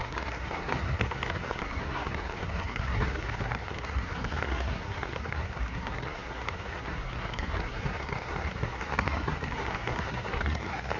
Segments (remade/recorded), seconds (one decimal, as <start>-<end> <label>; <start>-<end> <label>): 0.0-11.0 remade